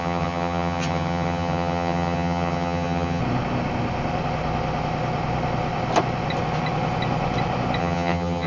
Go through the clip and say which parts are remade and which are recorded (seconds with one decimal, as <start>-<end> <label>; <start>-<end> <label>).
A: 0.0-3.2 remade; 3.2-7.8 recorded; 7.8-8.5 remade